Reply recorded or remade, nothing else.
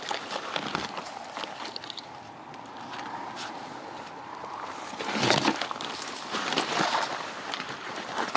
recorded